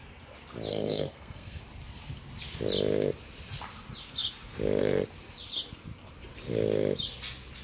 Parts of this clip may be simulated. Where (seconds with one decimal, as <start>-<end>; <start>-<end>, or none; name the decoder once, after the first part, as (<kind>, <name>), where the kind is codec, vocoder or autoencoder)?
0.7-1.6 (codec, SNAC)